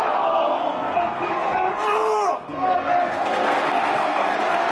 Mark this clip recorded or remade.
remade